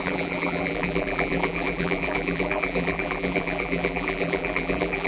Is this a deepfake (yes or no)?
yes